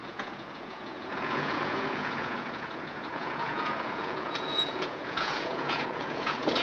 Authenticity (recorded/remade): remade